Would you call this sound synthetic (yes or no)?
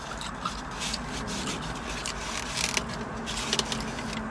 no